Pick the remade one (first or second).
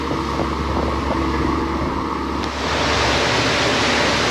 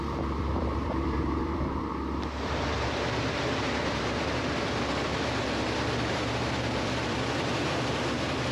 second